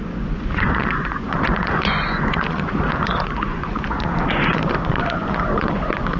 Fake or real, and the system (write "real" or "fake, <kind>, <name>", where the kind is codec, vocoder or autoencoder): fake, vocoder, Vocos